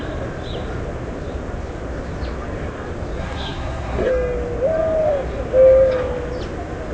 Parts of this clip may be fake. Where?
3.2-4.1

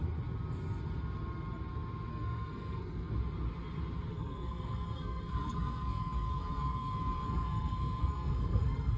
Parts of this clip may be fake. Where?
2.1-3.1; 4.1-9.0